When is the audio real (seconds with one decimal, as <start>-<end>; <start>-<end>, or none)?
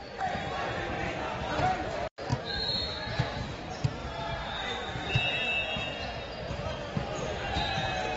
0.0-2.3; 3.6-8.2